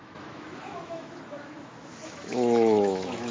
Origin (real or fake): fake